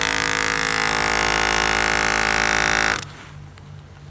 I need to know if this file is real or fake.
real